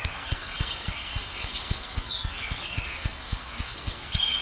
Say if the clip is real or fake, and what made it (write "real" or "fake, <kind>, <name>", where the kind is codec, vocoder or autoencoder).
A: fake, codec, SNAC